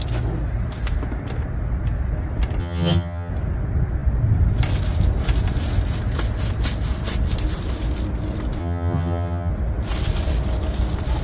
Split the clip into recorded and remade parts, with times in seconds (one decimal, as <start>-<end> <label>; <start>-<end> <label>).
0.0-2.6 recorded; 2.6-3.3 remade; 3.3-8.6 recorded; 8.6-9.5 remade; 9.5-11.2 recorded